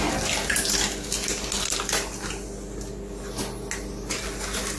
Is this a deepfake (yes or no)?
no